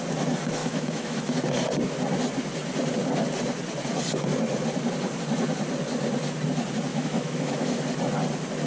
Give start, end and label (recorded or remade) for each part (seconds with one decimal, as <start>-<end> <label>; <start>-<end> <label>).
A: 0.0-0.6 recorded; 0.6-1.2 remade; 1.2-6.9 recorded; 6.9-7.8 remade; 7.8-8.7 recorded